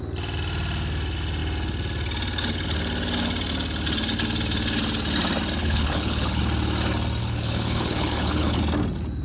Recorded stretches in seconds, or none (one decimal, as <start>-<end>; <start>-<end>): 0.0-5.6; 6.4-7.2; 8.6-9.2